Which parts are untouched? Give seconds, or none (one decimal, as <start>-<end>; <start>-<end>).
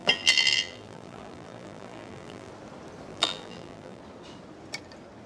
2.5-3.1; 4.0-5.3